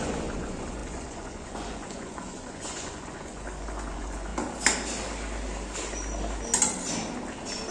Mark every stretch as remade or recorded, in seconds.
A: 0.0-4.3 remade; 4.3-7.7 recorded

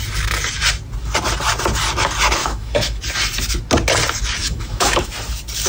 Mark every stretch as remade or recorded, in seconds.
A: 0.0-2.4 recorded; 2.4-3.0 remade; 3.0-4.4 recorded; 4.4-5.1 remade; 5.1-5.7 recorded

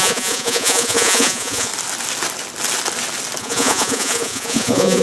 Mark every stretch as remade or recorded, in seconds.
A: 0.0-1.7 remade; 1.7-3.4 recorded; 3.4-5.0 remade

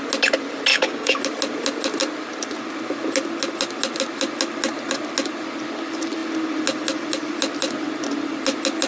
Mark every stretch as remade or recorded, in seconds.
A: 0.0-0.7 recorded; 0.7-1.2 remade; 1.2-8.9 recorded

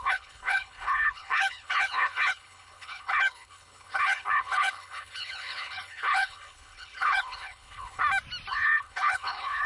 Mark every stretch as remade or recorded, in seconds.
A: 0.0-8.0 remade; 8.0-8.5 recorded; 8.5-9.7 remade

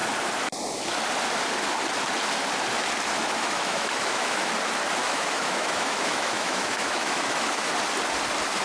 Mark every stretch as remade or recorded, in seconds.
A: 0.0-3.2 recorded; 3.2-4.5 remade; 4.5-5.0 recorded; 5.0-7.7 remade; 7.7-8.6 recorded

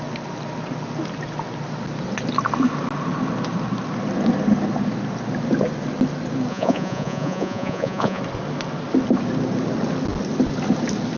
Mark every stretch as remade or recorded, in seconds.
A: 0.0-6.5 recorded; 6.5-8.2 remade; 8.2-11.2 recorded

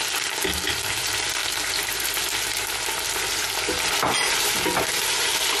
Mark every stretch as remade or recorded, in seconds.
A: 0.0-5.6 recorded